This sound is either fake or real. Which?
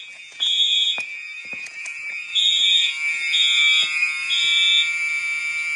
fake